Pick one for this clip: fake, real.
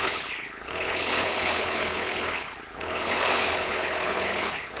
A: fake